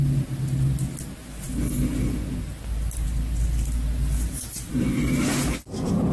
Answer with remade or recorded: recorded